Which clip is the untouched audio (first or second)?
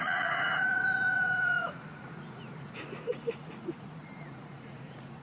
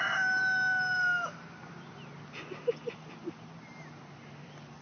second